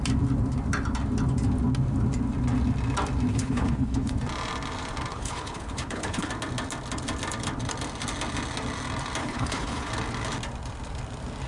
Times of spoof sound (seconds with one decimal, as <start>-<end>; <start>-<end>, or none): 3.3-4.1; 5.1-6.3; 9.2-9.9